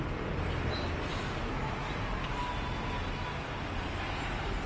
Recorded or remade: recorded